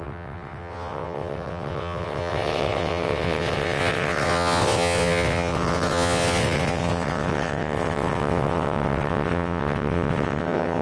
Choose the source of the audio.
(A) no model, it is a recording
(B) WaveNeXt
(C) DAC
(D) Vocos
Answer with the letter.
B